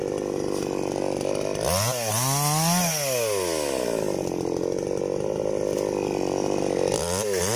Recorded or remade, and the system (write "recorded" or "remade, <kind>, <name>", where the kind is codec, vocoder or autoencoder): recorded